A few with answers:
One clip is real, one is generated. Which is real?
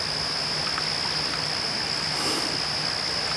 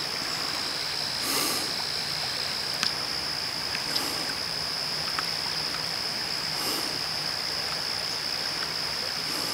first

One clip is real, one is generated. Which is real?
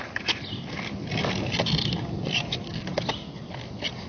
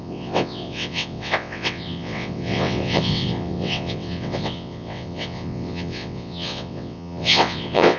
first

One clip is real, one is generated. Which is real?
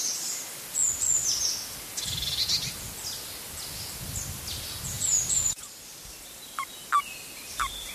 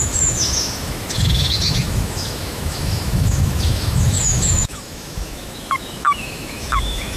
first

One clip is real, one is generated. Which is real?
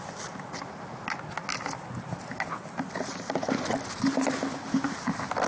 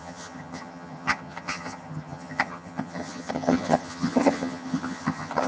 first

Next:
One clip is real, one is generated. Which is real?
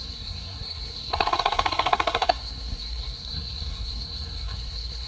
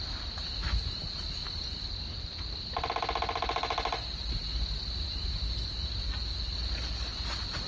second